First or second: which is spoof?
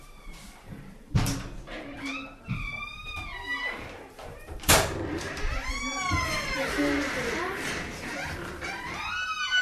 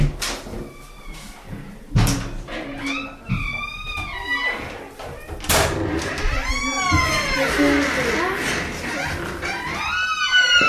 first